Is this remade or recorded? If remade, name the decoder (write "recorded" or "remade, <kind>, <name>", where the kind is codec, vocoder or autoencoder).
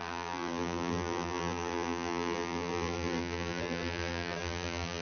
remade, vocoder, BigVGAN v2